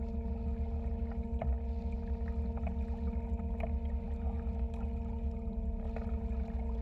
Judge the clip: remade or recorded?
recorded